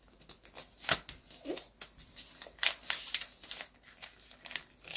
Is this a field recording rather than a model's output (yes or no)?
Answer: yes